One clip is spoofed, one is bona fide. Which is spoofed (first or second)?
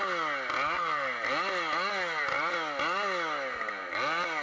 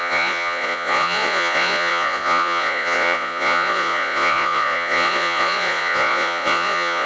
second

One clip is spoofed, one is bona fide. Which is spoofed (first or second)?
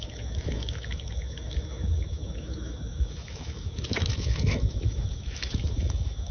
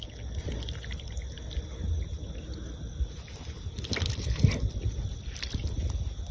first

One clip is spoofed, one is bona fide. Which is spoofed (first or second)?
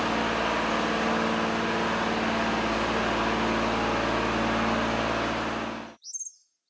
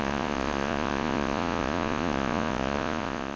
second